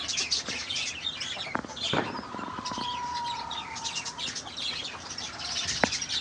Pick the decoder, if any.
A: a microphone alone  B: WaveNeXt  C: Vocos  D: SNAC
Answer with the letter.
A